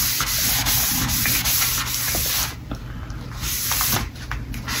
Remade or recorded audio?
recorded